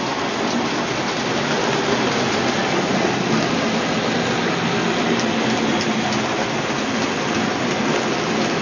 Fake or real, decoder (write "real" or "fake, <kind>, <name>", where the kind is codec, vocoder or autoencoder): real